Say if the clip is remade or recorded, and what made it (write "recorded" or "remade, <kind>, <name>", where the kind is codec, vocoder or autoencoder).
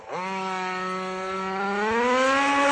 recorded